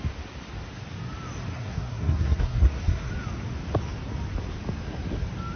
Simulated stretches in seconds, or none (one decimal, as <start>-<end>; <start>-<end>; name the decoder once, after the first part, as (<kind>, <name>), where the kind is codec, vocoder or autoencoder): 1.5-3.1 (codec, SNAC)